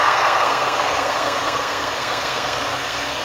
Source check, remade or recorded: remade